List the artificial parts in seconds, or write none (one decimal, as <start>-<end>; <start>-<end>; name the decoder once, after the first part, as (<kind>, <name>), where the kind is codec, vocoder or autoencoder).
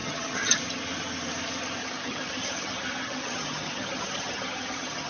0.0-0.6 (vocoder, HiFi-GAN); 1.8-5.1